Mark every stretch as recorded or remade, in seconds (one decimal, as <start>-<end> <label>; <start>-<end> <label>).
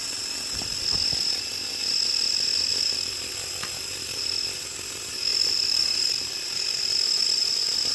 0.0-0.7 remade; 0.7-2.7 recorded; 2.7-3.3 remade; 3.3-5.3 recorded; 5.3-6.4 remade; 6.4-7.9 recorded